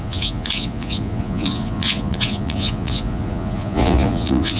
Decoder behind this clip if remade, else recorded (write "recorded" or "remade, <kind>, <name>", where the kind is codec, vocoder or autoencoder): remade, vocoder, Vocos